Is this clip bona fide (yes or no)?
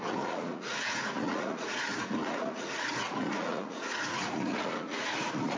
no